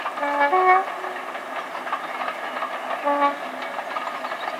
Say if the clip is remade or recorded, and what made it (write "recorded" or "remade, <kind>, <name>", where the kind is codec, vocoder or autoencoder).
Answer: recorded